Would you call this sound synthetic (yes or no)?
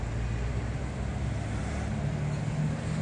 no